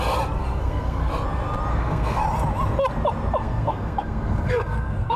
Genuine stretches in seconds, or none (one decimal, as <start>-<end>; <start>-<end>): 0.0-0.4; 1.1-1.7; 2.2-3.4